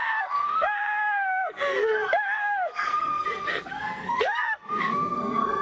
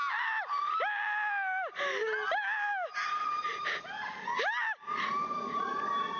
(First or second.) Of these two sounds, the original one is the second